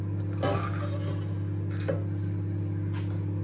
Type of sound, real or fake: real